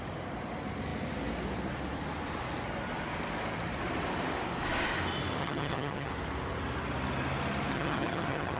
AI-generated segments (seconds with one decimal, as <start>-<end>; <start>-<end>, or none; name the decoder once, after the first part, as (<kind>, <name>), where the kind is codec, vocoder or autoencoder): 5.4-6.1 (vocoder, HiFi-GAN); 7.7-8.6